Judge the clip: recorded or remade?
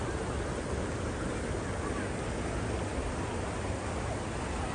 recorded